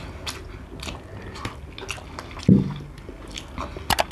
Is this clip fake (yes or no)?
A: no